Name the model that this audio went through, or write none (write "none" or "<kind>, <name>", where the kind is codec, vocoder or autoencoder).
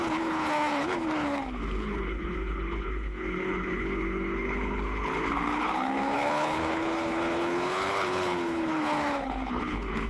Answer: codec, HILCodec